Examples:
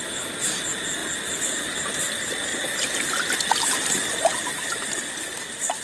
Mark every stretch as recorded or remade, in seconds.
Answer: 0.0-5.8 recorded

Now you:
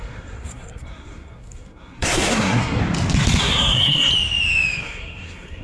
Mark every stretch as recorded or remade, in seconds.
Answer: 0.0-2.8 remade; 2.8-3.4 recorded; 3.4-4.1 remade; 4.1-4.8 recorded; 4.8-5.6 remade

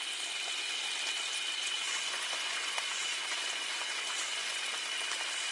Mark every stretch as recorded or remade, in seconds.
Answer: 0.0-1.6 recorded; 1.6-4.6 remade; 4.6-5.5 recorded

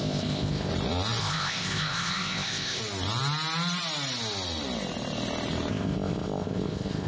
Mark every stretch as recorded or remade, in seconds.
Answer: 0.0-0.7 remade; 0.7-1.2 recorded; 1.2-2.8 remade; 2.8-5.7 recorded; 5.7-7.1 remade

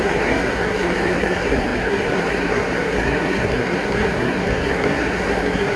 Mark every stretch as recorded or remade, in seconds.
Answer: 0.0-5.8 remade

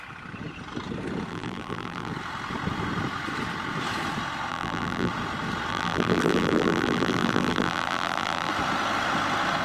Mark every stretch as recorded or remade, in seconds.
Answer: 0.0-1.3 recorded; 1.3-2.1 remade; 2.1-4.5 recorded; 4.5-5.1 remade; 5.1-5.7 recorded; 5.7-8.5 remade; 8.5-9.6 recorded

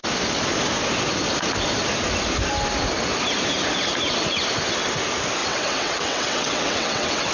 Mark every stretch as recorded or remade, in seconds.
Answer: 0.0-5.4 recorded; 5.4-7.3 remade

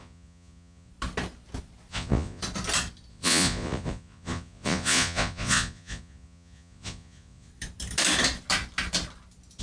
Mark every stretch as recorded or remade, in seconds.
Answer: 0.0-0.9 remade; 0.9-1.9 recorded; 1.9-2.4 remade; 2.4-3.1 recorded; 3.1-7.5 remade; 7.5-9.6 recorded